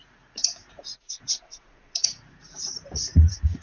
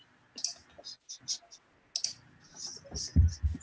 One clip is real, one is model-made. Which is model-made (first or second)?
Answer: first